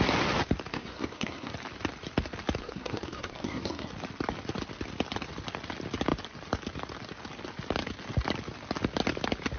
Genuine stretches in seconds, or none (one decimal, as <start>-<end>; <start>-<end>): 0.0-0.7; 1.5-2.6; 3.9-9.6